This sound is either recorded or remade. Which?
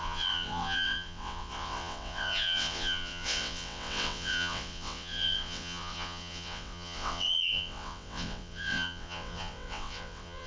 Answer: remade